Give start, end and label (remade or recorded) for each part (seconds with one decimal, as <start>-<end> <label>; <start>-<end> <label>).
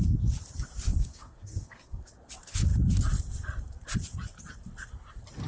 0.0-0.9 recorded; 0.9-2.1 remade; 2.1-5.5 recorded